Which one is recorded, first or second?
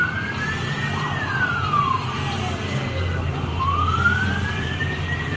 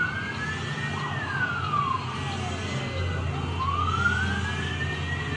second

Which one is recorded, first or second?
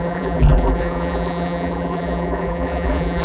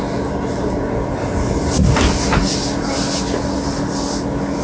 second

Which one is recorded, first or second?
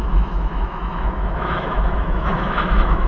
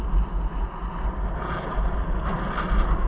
second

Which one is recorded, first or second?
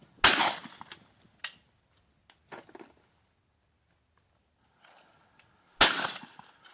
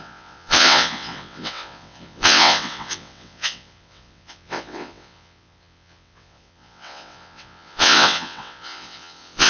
first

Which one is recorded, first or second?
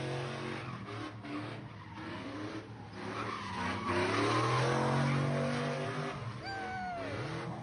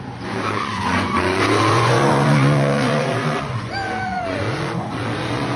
first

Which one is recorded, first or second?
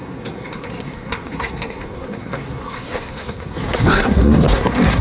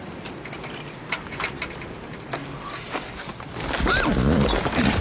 second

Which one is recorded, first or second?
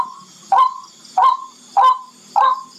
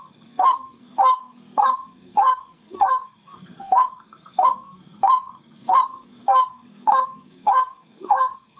first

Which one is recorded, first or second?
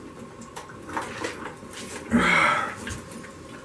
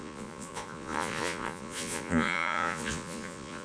first